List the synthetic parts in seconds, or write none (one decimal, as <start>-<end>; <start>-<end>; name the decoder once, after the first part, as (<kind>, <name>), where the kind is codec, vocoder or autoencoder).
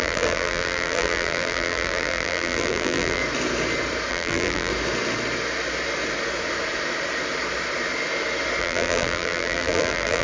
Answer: 0.0-3.2 (vocoder, BigVGAN v2); 4.1-4.7; 8.6-10.2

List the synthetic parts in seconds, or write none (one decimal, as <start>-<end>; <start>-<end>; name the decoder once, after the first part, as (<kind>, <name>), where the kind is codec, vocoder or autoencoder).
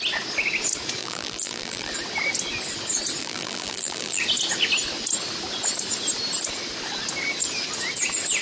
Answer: 1.0-1.9 (vocoder, BigVGAN v2); 3.2-4.2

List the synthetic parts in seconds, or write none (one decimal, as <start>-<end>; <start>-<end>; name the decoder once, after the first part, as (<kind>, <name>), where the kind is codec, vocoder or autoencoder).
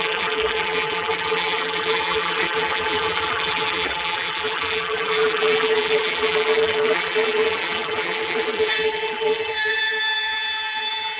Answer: 0.0-11.2 (vocoder, BigVGAN v2)